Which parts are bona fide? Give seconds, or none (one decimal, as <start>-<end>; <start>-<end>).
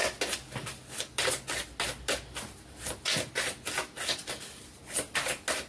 0.0-5.7